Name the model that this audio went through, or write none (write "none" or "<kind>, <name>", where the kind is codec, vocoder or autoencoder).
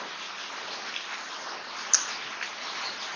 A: none